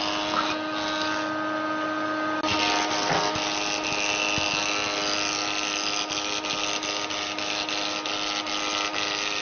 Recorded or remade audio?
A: recorded